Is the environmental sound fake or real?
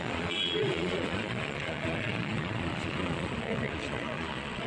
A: fake